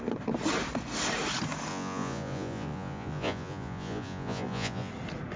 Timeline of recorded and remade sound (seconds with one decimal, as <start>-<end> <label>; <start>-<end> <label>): 0.0-1.7 recorded; 1.7-4.9 remade; 4.9-5.4 recorded